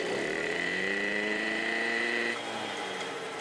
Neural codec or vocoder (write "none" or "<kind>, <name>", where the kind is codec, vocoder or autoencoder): vocoder, BigVGAN v2